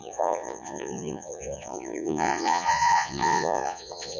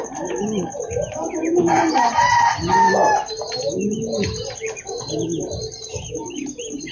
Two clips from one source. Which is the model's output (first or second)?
first